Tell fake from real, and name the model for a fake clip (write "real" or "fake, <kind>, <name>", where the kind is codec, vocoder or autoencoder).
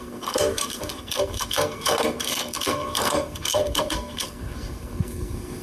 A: fake, codec, SNAC